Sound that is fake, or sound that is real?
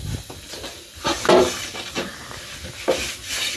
real